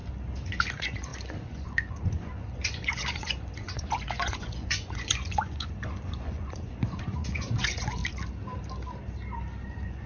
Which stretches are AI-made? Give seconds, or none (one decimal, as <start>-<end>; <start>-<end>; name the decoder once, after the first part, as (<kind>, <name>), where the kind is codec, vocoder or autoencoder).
0.7-8.0 (vocoder, Vocos); 9.7-10.1

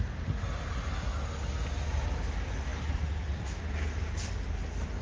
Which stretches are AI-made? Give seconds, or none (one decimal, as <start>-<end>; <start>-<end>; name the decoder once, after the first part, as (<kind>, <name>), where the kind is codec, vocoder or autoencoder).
none

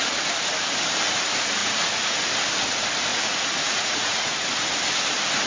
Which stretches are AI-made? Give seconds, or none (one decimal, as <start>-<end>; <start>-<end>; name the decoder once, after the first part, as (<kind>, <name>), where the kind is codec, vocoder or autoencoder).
1.6-2.3 (vocoder, Vocos); 3.1-4.6

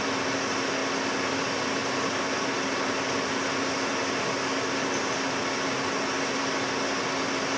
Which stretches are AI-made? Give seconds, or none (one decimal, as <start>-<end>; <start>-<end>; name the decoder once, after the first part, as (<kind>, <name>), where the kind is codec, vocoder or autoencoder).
none

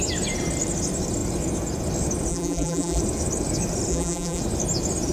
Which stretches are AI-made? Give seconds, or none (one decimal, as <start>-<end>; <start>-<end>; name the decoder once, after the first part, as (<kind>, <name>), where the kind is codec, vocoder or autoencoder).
2.3-3.0 (vocoder, BigVGAN v2); 3.9-4.4

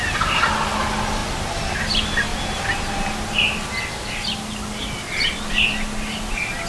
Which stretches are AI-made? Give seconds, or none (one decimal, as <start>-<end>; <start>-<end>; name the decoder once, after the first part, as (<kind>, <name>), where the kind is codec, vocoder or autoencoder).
none

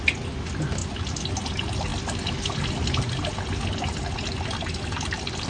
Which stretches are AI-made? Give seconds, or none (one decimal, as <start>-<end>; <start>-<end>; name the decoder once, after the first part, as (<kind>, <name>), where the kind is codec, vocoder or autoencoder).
none